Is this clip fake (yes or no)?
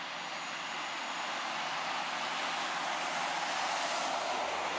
no